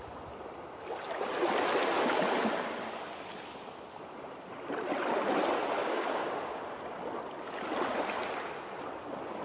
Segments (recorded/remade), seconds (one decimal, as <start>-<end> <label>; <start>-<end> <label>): 0.0-5.8 recorded; 5.8-6.5 remade; 6.5-9.4 recorded